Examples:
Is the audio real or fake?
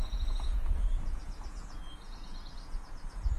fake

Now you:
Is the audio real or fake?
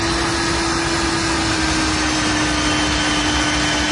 real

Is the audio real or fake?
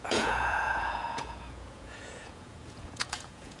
fake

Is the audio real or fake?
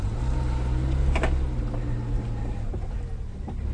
real